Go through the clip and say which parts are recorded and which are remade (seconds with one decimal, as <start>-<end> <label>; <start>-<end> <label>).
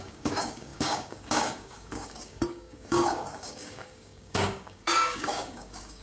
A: 0.0-6.0 remade